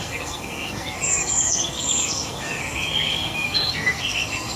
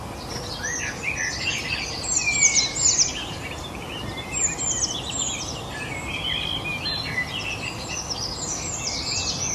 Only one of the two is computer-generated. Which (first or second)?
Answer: first